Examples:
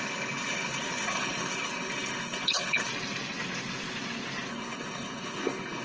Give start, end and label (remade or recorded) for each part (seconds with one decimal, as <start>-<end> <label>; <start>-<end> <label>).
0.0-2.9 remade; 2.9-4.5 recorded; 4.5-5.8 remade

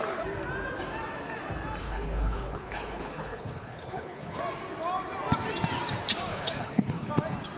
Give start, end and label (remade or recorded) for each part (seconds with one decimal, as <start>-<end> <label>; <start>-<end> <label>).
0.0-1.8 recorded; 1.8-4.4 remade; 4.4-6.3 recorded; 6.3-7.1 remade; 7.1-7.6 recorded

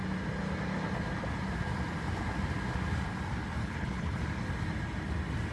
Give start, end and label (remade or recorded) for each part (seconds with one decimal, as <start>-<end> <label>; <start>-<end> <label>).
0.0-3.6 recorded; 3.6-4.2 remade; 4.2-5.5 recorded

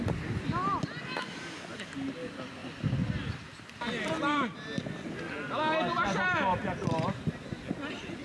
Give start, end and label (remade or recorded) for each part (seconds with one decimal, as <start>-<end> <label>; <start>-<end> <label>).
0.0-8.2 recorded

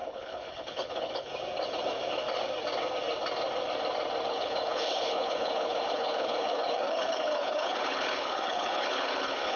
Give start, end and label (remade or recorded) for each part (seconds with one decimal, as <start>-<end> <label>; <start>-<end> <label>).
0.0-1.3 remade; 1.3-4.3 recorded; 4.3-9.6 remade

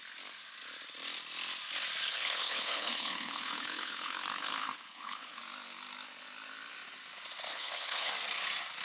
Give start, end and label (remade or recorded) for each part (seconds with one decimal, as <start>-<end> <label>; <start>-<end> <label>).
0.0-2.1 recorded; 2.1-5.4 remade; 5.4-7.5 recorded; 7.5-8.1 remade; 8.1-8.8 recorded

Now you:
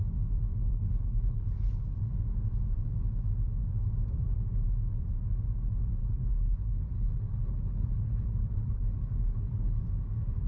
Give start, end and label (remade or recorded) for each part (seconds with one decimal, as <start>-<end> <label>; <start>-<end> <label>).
0.0-0.6 recorded; 0.6-1.8 remade; 1.8-6.0 recorded; 6.0-9.8 remade; 9.8-10.5 recorded